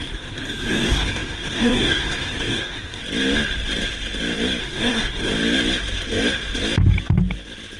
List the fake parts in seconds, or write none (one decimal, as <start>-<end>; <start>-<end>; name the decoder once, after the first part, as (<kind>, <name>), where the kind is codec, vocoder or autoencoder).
0.0-3.0 (codec, SNAC); 4.6-5.3